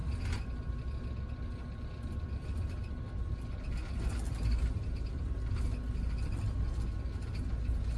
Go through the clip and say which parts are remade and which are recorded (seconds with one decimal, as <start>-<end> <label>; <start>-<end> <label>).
0.0-8.0 recorded